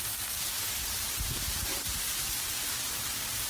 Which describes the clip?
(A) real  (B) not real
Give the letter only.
B